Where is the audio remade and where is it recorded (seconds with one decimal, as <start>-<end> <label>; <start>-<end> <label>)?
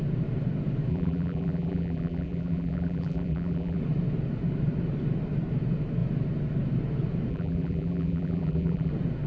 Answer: 0.0-0.9 recorded; 0.9-3.8 remade; 3.8-7.3 recorded; 7.3-8.9 remade; 8.9-9.3 recorded